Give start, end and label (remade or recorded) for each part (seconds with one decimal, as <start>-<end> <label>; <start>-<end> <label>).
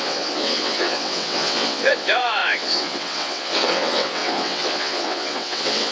0.0-5.9 remade